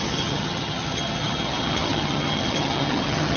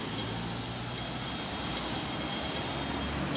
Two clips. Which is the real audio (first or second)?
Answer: second